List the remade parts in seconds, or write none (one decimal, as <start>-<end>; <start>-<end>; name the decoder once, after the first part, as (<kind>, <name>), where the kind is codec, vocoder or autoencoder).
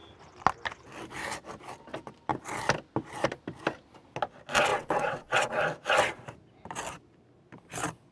4.7-5.5 (vocoder, WaveNeXt)